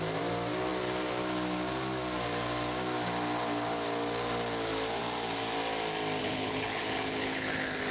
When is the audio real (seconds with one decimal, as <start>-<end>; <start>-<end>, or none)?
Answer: 0.0-6.2